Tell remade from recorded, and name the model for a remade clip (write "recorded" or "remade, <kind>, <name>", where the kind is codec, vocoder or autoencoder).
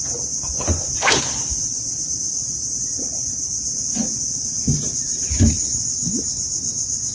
recorded